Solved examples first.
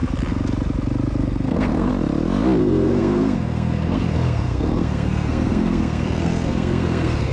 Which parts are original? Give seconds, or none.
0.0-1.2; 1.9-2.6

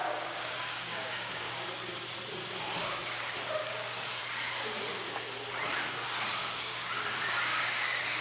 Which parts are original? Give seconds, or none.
1.8-3.6; 4.2-6.4; 6.9-7.5

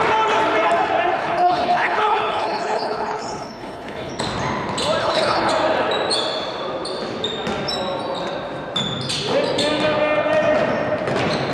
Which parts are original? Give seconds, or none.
0.0-1.2; 4.1-5.0; 5.5-11.5

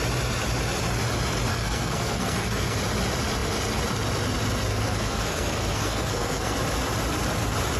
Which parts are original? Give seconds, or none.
0.0-1.5; 2.8-4.7; 6.6-7.8

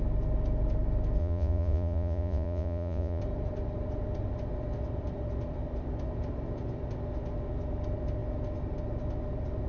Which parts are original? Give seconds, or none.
0.0-1.2; 3.2-9.7

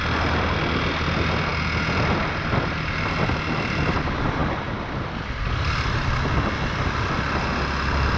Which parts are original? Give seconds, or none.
0.0-8.2

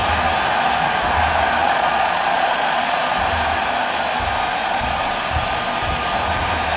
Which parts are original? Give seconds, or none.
0.0-1.6; 3.1-4.6; 5.1-6.8